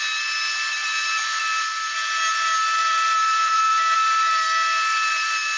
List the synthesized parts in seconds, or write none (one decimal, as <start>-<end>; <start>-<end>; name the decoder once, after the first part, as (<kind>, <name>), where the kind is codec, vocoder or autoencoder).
2.8-4.3 (vocoder, BigVGAN v2)